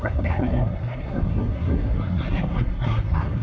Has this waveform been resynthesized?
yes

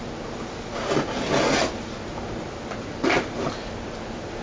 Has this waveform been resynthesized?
no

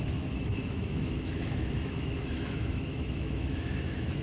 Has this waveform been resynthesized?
yes